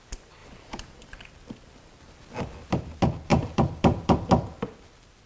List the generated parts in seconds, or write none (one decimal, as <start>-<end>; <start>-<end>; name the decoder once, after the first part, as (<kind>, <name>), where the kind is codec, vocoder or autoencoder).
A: 3.3-4.3 (vocoder, BigVGAN v2)